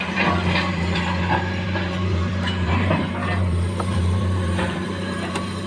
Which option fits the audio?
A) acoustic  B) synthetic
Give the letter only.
B